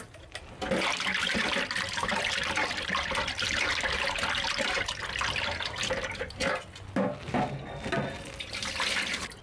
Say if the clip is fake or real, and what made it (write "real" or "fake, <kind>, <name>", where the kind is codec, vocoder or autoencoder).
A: real